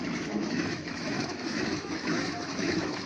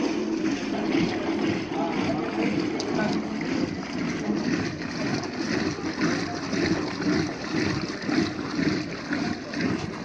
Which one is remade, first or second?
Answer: first